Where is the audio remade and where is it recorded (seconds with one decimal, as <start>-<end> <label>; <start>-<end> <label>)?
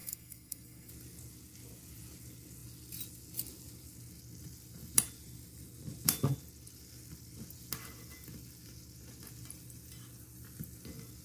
0.0-0.9 remade; 0.9-11.2 recorded